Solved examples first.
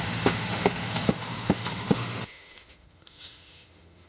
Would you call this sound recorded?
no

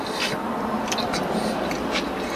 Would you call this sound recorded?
yes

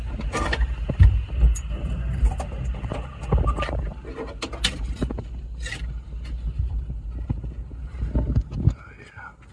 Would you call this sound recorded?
yes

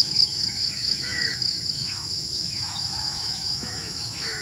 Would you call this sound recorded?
no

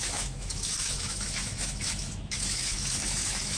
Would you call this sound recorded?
no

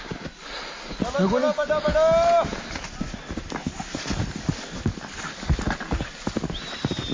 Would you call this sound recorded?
yes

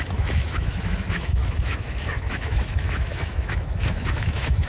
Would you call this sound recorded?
no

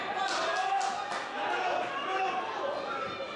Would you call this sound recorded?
yes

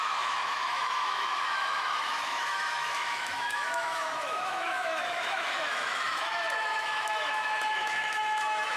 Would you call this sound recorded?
no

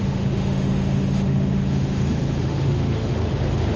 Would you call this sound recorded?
no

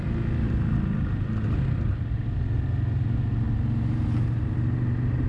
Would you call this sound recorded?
yes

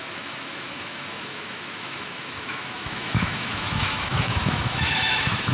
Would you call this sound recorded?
no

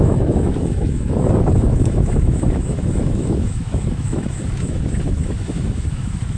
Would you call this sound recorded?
no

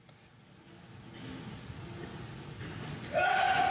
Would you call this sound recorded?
yes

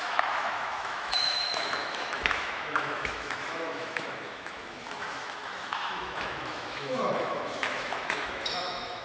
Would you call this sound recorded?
no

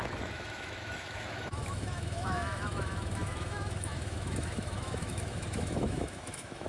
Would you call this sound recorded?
no